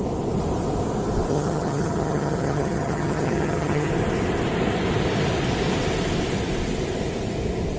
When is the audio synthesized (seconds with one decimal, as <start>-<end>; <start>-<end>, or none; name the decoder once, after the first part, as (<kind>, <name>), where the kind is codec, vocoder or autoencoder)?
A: 1.3-3.9 (vocoder, HiFi-GAN)